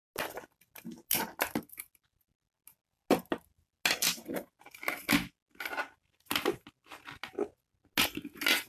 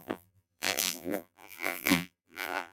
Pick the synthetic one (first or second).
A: second